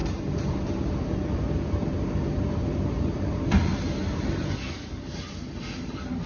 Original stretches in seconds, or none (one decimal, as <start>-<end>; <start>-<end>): 3.7-5.8